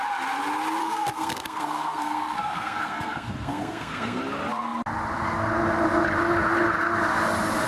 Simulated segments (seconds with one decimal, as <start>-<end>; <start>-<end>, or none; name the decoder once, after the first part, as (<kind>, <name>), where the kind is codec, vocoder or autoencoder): 0.8-4.2 (codec, SNAC)